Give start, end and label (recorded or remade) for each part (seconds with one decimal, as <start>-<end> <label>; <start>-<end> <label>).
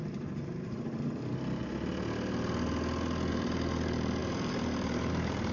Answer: 0.0-1.6 remade; 1.6-3.3 recorded; 3.3-5.5 remade